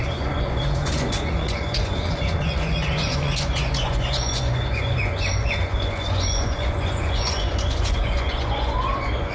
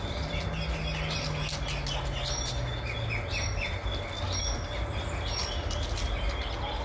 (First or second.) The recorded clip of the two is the second